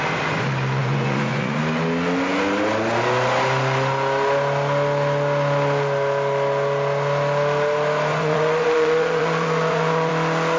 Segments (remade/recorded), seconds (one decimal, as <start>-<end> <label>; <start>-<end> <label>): 0.0-0.8 recorded; 0.8-1.6 remade; 1.6-8.1 recorded; 8.1-10.1 remade; 10.1-10.6 recorded